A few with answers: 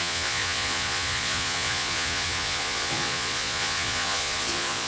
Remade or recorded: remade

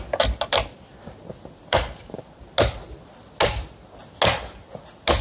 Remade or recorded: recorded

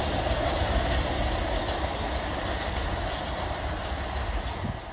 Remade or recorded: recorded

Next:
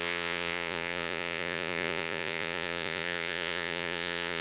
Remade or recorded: remade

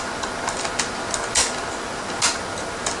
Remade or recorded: recorded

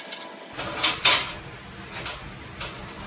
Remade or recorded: recorded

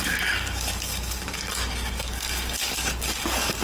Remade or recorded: remade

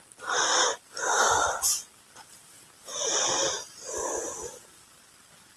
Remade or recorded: recorded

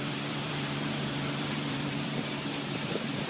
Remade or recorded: remade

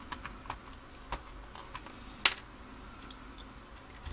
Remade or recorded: recorded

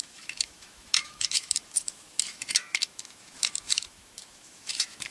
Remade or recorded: remade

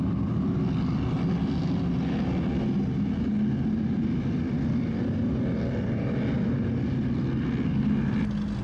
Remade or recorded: recorded